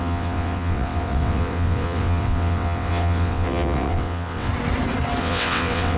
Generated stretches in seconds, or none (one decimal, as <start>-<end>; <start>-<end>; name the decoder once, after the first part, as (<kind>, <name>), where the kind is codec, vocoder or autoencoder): 0.0-4.5 (vocoder, WaveNeXt); 5.2-6.0